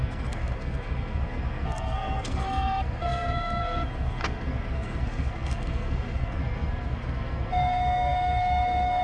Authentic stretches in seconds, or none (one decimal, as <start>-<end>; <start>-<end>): none